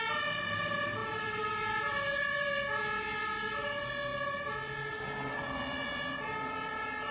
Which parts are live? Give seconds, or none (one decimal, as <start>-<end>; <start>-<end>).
0.0-7.1